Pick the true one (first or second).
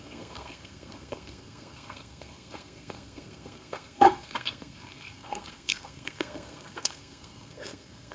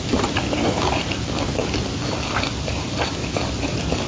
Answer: second